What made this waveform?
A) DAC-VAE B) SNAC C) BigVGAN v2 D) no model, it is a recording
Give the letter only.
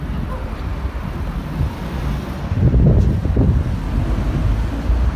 D